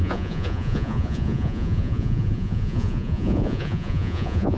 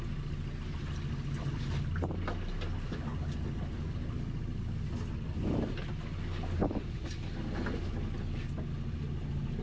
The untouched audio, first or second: second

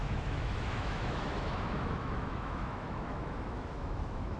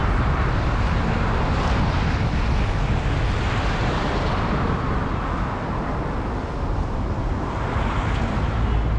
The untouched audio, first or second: second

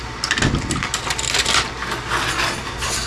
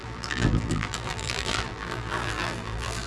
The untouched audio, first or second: first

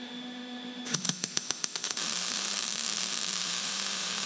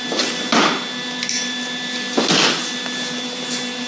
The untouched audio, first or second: second